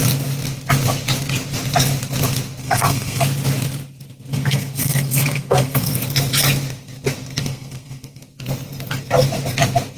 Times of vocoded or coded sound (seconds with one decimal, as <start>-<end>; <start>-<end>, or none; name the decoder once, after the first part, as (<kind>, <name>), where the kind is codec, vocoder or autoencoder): 2.6-3.2 (codec, SNAC); 4.3-5.9; 7.4-8.2